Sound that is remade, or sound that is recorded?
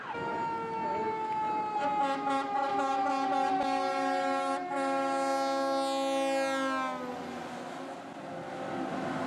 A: recorded